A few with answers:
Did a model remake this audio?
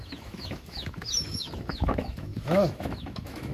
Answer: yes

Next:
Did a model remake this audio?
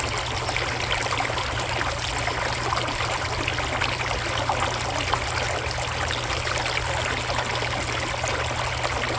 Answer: no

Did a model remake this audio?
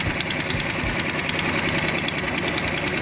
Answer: no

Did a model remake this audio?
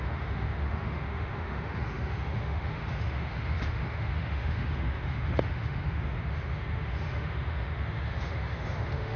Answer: yes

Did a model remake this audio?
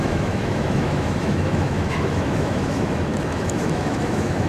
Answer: yes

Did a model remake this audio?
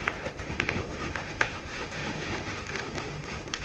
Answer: yes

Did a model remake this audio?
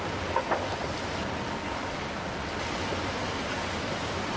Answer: no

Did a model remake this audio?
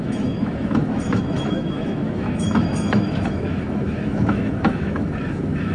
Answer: yes